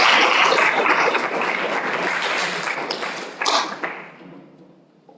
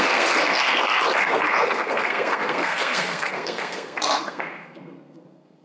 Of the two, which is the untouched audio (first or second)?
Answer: first